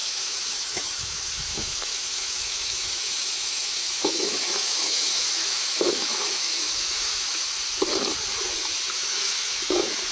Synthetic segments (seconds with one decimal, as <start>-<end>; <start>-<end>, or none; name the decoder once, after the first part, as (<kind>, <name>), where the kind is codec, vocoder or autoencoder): 0.0-7.4 (autoencoder, DAC-VAE); 8.9-10.1